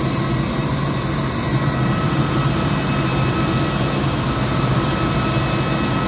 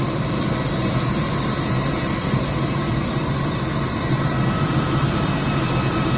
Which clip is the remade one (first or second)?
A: second